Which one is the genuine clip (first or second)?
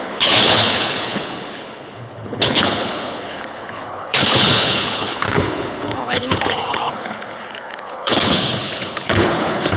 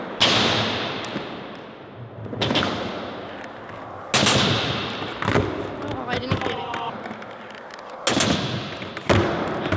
second